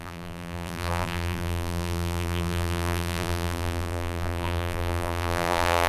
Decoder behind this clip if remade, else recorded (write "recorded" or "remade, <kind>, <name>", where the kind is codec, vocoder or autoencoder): remade, vocoder, BigVGAN v2